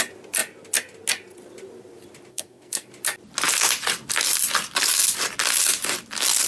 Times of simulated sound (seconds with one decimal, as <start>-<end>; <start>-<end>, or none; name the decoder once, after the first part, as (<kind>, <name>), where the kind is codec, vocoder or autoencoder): 2.3-2.9 (codec, SNAC)